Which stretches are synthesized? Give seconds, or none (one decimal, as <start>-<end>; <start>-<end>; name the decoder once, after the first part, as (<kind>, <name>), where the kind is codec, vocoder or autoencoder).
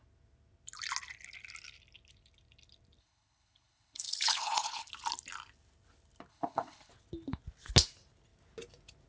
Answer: 3.0-4.9 (codec, HILCodec); 6.3-6.9